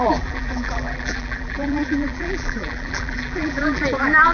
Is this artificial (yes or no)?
yes